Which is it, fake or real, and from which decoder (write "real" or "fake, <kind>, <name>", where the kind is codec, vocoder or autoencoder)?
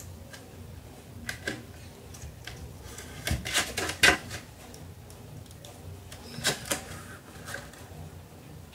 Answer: real